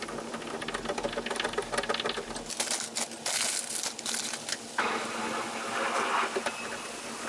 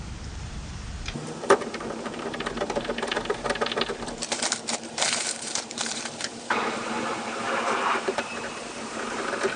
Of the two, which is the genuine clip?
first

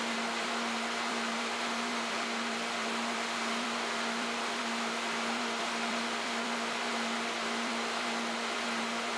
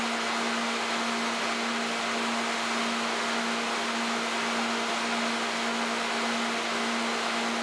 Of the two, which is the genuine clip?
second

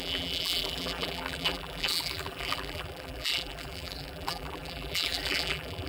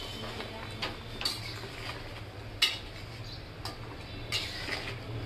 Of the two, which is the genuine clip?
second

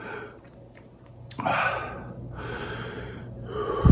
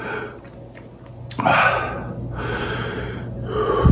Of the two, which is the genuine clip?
second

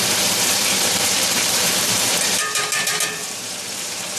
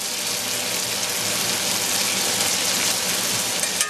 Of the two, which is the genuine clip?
second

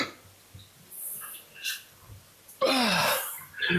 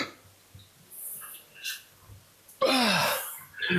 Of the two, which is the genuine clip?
second